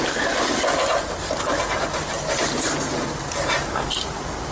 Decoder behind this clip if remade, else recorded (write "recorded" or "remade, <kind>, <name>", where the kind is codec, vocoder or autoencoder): recorded